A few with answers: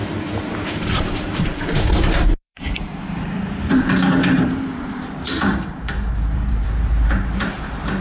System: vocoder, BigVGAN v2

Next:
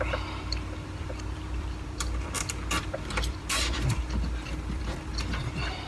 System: vocoder, BigVGAN v2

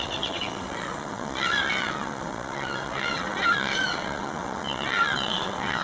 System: vocoder, WaveNeXt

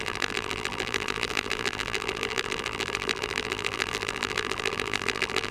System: vocoder, BigVGAN v2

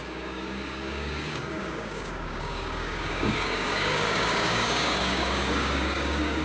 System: codec, DAC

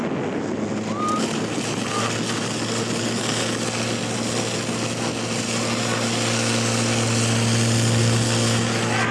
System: none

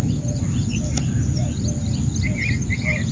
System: none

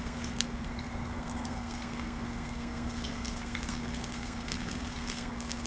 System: codec, SNAC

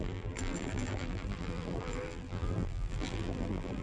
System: vocoder, BigVGAN v2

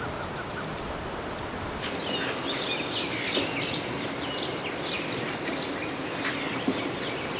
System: none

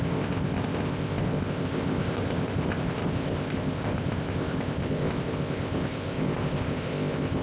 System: codec, ZipCodec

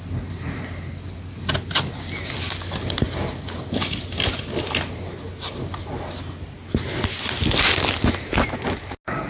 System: none